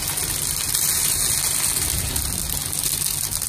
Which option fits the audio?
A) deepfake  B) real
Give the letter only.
B